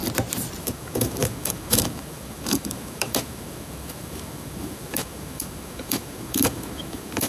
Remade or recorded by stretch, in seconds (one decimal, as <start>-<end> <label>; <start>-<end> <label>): 0.0-0.6 recorded; 0.6-7.3 remade